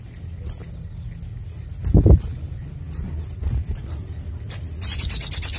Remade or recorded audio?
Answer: recorded